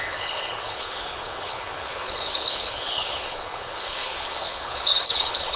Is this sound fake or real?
fake